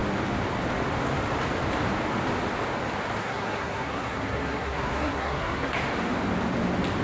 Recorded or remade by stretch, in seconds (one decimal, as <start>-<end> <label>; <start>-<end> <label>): 0.0-3.2 recorded; 3.2-5.7 remade; 5.7-7.0 recorded